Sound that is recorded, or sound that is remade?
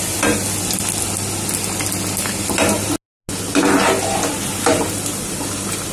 recorded